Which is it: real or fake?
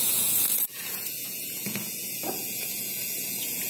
fake